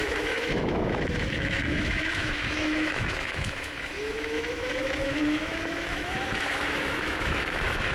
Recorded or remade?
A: remade